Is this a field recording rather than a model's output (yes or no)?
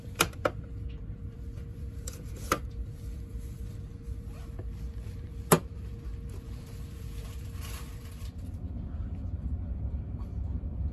no